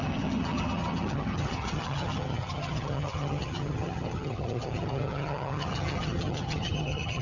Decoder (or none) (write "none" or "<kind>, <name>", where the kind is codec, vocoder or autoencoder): vocoder, HiFi-GAN